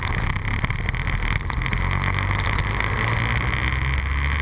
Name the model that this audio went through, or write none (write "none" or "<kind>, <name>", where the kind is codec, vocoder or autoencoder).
none